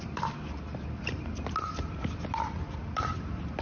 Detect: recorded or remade recorded